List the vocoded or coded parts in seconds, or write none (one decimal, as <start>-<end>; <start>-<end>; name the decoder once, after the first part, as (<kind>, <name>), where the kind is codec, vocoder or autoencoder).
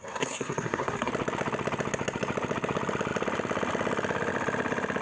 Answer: 0.0-1.1 (codec, SNAC)